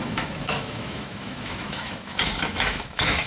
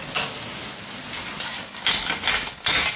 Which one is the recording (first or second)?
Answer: second